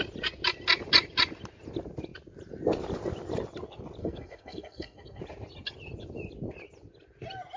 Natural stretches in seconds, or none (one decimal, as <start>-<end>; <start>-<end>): 0.0-4.0; 5.2-7.6